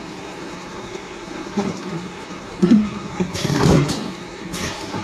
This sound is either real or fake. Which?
fake